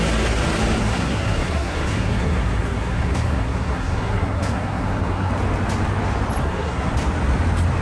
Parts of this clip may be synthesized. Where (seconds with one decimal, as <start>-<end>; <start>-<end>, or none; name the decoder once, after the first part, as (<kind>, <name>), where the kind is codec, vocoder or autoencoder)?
0.8-5.3 (codec, SNAC); 6.4-6.9